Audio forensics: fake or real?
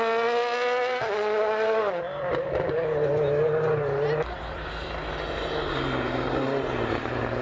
real